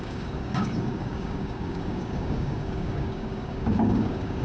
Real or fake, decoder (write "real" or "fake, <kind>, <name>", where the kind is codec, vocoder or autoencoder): fake, codec, DAC